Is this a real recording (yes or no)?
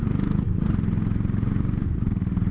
no